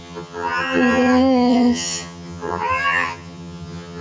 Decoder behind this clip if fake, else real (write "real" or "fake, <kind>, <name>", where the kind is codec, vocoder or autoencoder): fake, vocoder, HiFi-GAN